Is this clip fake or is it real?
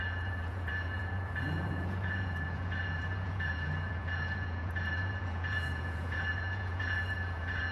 fake